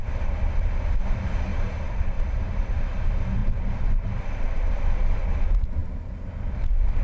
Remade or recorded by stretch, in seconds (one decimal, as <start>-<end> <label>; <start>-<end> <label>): 0.0-1.5 recorded; 1.5-2.7 remade; 2.7-3.4 recorded; 3.4-5.1 remade; 5.1-7.0 recorded

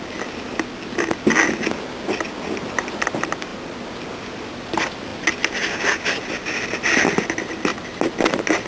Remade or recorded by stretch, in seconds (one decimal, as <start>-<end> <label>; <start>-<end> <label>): 0.0-8.7 recorded